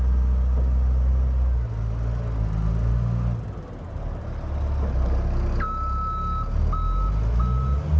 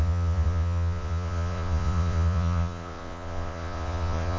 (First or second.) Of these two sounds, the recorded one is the first